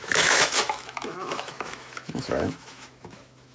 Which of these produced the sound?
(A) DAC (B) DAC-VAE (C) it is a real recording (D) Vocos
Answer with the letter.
B